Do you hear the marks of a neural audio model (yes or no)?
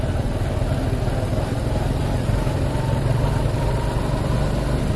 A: no